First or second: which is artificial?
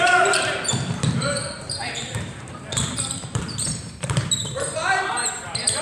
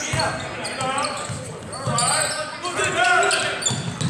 first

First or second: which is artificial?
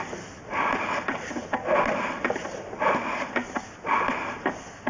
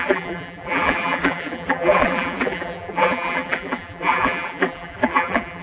second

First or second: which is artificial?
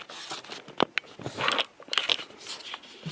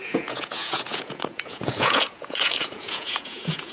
second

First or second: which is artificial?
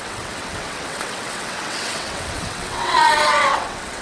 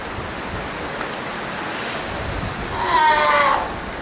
first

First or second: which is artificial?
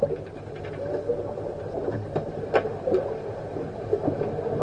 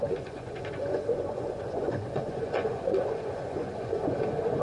second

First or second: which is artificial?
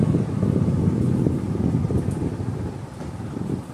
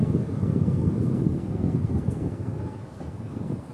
second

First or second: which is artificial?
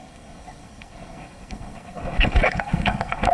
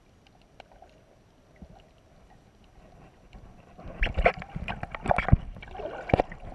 first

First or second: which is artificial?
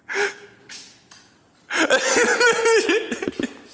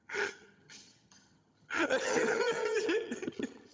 second